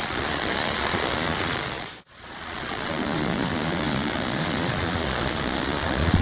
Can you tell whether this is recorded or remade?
remade